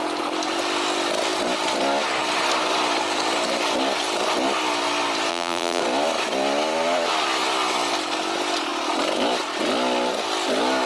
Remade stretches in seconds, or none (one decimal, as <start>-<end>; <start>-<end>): 5.3-5.8